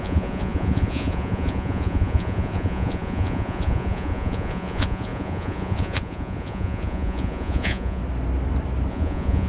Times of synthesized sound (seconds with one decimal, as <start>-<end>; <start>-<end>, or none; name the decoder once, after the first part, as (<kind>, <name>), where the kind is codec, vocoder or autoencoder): 0.0-8.0 (vocoder, Vocos); 8.9-9.5